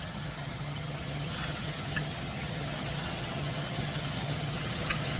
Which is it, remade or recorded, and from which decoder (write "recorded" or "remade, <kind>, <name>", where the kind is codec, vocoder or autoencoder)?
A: remade, vocoder, HiFi-GAN